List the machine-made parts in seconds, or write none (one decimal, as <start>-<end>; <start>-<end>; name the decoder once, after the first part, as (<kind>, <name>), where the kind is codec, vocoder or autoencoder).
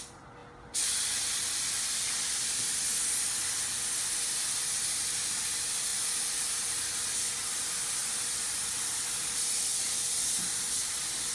8.0-9.1 (vocoder, BigVGAN v2)